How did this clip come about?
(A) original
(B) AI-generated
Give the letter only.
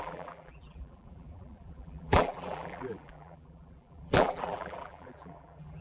B